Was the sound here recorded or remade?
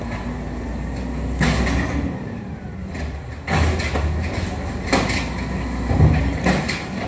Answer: recorded